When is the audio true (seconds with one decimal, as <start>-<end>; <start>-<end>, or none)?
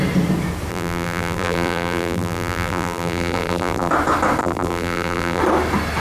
0.0-0.7; 3.9-4.4; 5.4-6.0